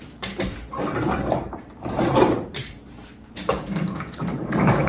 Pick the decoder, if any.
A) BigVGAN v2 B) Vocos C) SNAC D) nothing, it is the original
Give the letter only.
A